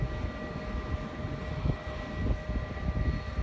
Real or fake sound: real